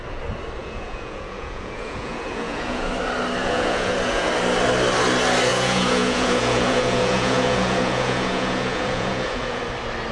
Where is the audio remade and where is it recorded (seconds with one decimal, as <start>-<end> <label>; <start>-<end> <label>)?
0.0-0.6 recorded; 0.6-2.9 remade; 2.9-3.4 recorded; 3.4-4.3 remade; 4.3-5.5 recorded; 5.5-9.6 remade; 9.6-10.1 recorded